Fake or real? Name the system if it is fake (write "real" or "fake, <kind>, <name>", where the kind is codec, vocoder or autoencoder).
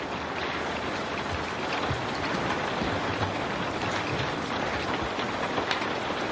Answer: real